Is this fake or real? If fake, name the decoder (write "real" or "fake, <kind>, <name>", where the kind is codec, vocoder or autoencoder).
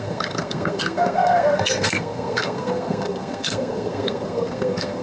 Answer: fake, codec, SNAC